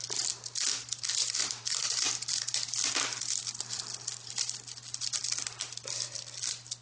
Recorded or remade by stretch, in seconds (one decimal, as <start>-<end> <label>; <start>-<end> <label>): 0.0-1.2 recorded; 1.2-1.8 remade; 1.8-6.8 recorded